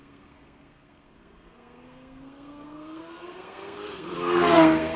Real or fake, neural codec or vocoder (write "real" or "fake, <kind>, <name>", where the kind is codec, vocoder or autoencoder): fake, codec, SNAC